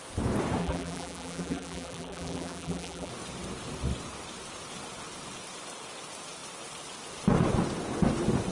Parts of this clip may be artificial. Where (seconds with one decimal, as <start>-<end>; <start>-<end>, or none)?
0.6-3.1